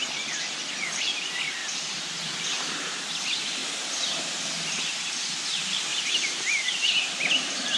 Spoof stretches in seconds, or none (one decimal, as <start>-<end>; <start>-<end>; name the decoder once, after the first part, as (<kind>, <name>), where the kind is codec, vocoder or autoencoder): 1.6-2.4 (vocoder, BigVGAN v2); 3.6-4.2; 5.9-7.8